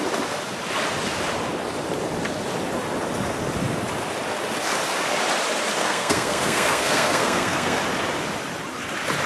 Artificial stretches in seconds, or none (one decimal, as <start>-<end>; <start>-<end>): 5.8-7.8